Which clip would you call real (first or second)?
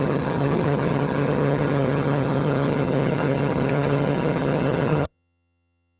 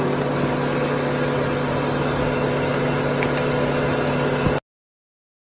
second